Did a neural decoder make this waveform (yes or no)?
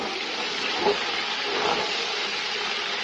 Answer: no